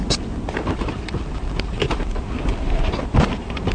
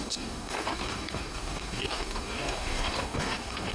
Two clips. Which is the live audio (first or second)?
first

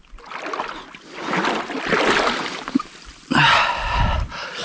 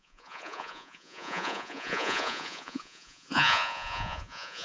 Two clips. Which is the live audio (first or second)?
first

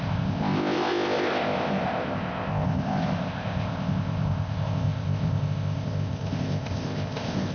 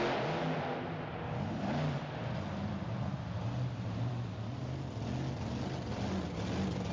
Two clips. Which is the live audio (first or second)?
second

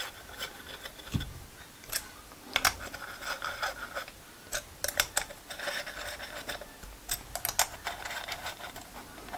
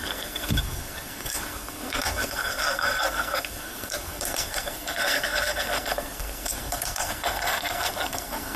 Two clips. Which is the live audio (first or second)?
first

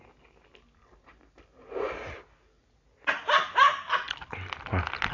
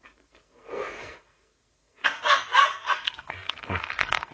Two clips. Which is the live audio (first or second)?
first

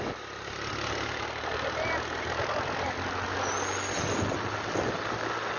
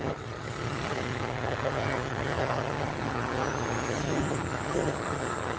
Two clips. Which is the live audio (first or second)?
first